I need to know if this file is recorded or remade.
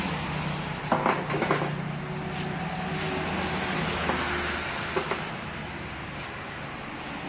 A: recorded